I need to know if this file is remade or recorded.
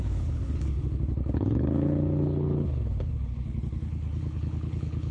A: remade